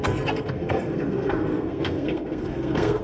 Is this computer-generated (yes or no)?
yes